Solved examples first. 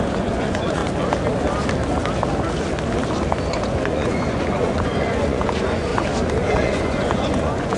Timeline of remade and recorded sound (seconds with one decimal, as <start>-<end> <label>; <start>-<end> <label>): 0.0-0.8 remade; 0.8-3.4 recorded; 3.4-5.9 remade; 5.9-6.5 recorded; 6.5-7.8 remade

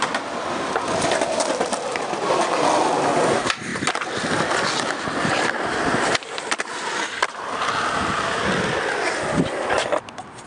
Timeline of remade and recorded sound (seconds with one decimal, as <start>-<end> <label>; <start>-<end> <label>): 0.0-10.5 recorded

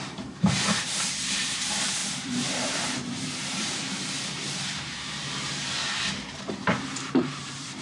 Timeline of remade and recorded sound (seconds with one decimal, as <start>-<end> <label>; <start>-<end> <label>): 0.0-7.8 remade